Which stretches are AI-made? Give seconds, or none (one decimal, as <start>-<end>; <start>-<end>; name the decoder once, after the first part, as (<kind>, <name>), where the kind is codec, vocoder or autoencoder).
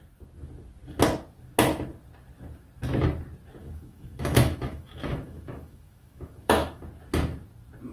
3.6-6.8 (autoencoder, DAC-VAE)